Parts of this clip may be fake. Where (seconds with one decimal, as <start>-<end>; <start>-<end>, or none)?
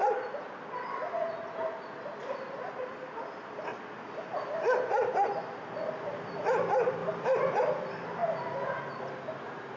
none